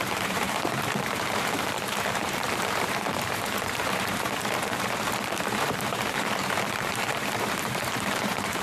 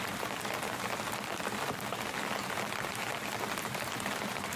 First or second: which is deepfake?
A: first